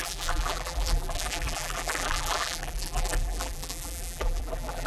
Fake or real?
fake